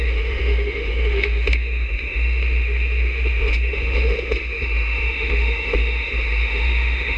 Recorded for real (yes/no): no